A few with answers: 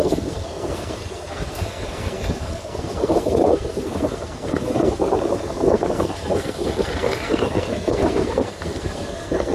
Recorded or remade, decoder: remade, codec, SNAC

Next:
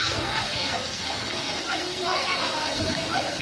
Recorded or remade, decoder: remade, codec, SNAC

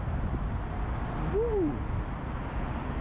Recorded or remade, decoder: recorded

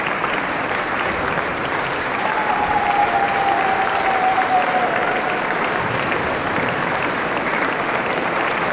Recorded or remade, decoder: remade, vocoder, BigVGAN v2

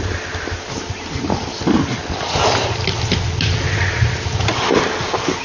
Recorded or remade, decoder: recorded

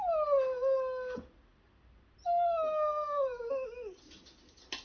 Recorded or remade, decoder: recorded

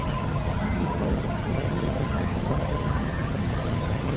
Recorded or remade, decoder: remade, vocoder, HiFi-GAN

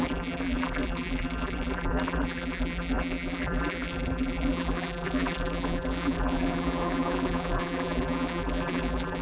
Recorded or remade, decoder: remade, vocoder, BigVGAN v2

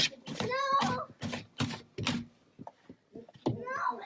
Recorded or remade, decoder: recorded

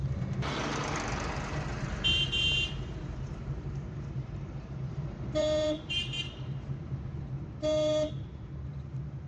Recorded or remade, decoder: remade, vocoder, BigVGAN v2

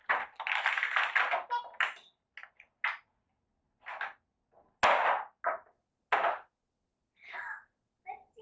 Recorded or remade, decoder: recorded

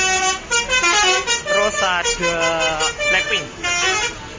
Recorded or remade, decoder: recorded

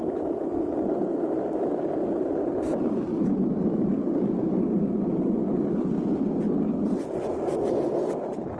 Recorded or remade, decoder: recorded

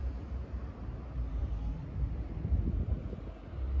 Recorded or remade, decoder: recorded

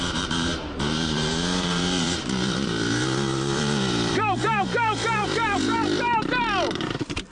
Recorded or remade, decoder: remade, vocoder, BigVGAN v2